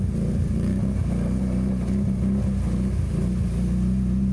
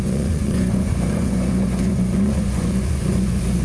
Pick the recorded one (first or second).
first